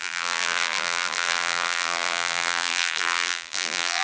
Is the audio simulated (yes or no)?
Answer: yes